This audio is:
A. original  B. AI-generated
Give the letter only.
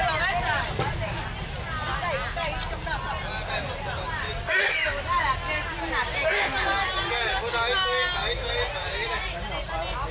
A